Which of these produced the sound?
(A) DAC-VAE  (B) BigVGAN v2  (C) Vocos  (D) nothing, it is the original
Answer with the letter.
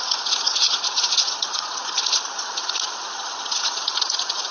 C